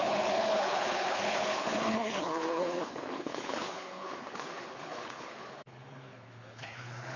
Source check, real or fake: fake